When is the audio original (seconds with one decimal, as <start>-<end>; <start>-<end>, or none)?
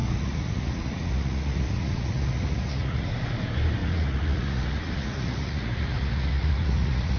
3.1-3.8